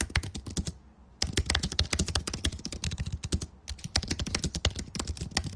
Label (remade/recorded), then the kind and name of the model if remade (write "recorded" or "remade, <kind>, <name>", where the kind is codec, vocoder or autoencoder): recorded